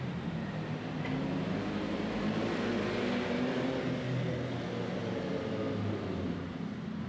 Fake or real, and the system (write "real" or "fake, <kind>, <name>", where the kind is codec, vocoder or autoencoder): real